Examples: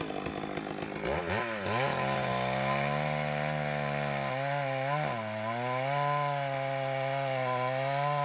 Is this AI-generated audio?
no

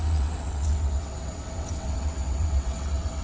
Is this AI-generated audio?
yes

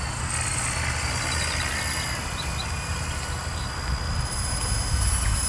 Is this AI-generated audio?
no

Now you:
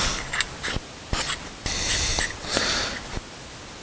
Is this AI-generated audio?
no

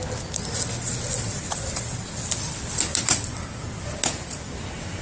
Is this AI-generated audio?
no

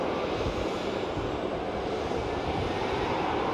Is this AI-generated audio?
no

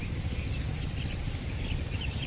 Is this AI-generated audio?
no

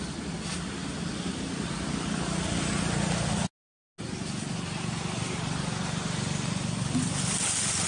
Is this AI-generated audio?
no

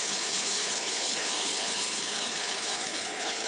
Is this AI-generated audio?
yes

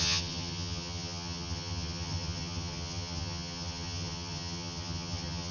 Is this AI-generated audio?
yes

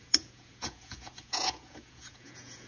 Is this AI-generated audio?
yes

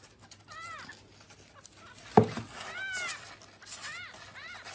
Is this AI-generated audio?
no